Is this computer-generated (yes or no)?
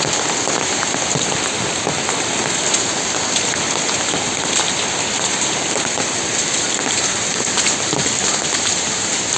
no